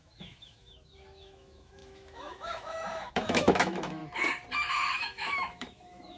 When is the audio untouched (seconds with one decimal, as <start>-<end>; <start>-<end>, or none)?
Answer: 4.0-4.7